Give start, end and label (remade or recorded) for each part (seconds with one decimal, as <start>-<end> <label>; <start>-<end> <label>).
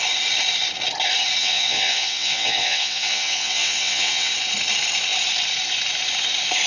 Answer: 0.0-1.4 recorded; 1.4-4.3 remade; 4.3-6.7 recorded